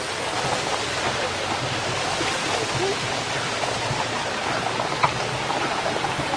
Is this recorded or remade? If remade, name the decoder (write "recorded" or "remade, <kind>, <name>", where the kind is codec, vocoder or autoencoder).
recorded